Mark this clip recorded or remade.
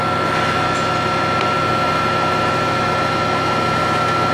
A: recorded